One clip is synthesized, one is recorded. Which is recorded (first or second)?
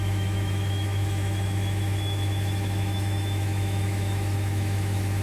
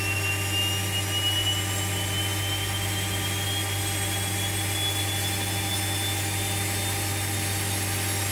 second